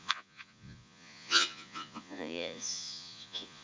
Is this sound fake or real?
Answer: fake